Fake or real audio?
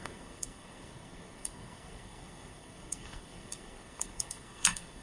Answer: fake